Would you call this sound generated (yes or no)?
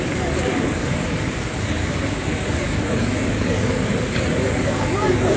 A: yes